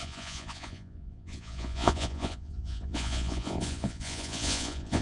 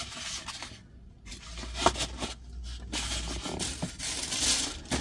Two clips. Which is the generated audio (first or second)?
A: first